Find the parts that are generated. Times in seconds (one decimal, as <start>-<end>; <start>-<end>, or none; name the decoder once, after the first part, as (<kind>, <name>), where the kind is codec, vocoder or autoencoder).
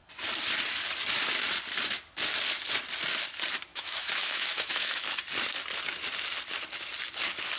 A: 3.7-5.2 (autoencoder, DAC-VAE)